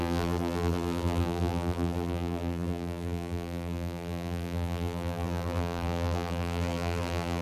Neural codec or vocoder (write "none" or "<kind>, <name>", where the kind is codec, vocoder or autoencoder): vocoder, BigVGAN v2